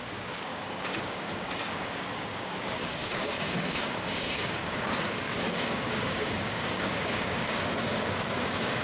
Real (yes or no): no